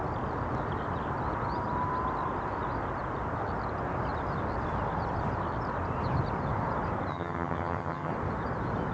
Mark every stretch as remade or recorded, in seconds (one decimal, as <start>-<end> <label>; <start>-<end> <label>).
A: 0.0-7.1 recorded; 7.1-8.1 remade; 8.1-8.9 recorded